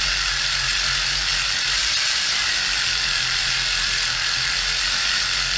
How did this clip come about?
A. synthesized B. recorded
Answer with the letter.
B